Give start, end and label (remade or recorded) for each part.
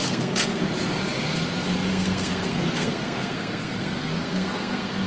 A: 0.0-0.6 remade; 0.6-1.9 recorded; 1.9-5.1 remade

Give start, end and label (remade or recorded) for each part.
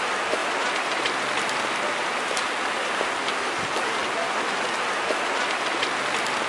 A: 0.0-0.4 recorded; 0.4-1.0 remade; 1.0-6.5 recorded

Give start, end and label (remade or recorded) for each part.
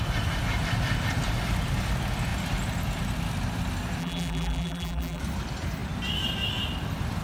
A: 0.0-4.0 recorded; 4.0-5.2 remade; 5.2-7.2 recorded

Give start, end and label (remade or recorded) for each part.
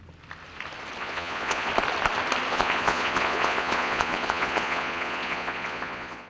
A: 0.0-1.0 recorded; 1.0-1.7 remade; 1.7-2.5 recorded; 2.5-6.3 remade